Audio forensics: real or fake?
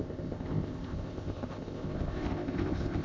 fake